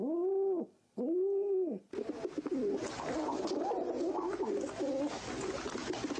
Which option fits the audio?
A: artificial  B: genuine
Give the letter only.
B